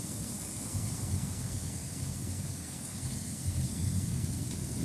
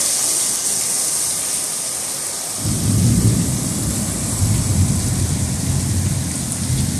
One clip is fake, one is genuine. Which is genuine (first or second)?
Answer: second